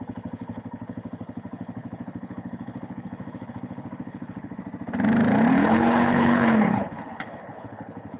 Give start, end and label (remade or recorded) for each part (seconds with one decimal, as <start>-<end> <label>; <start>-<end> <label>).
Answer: 0.0-4.6 remade; 4.6-5.5 recorded; 5.5-8.2 remade